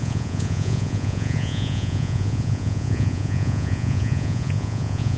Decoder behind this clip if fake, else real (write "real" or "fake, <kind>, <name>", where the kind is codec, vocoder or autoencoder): fake, vocoder, Vocos